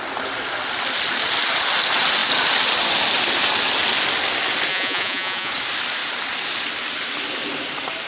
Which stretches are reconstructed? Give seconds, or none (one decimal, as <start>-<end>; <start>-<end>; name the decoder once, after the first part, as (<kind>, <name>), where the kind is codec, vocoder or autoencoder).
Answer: 4.7-5.5 (vocoder, Vocos)